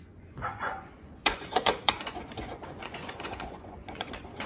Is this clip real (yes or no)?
no